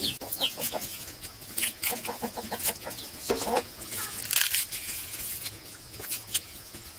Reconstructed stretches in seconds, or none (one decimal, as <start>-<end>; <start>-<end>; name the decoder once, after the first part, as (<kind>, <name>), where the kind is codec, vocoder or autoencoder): 0.0-4.2 (vocoder, Vocos); 4.8-7.0